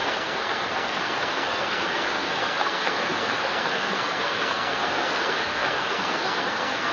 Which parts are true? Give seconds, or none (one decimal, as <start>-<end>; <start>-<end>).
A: none